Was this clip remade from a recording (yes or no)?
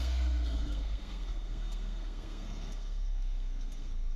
yes